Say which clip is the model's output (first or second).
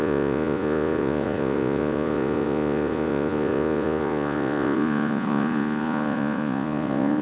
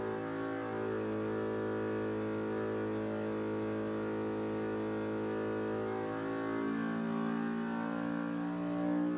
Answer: first